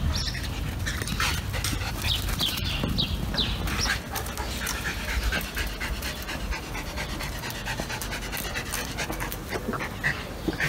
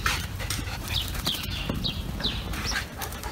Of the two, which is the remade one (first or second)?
second